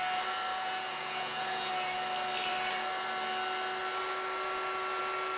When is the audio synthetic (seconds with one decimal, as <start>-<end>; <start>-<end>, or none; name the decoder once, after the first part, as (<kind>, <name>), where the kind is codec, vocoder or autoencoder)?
0.5-1.7 (vocoder, Vocos)